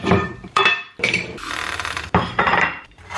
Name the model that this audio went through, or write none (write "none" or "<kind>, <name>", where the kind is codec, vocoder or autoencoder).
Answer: vocoder, BigVGAN v2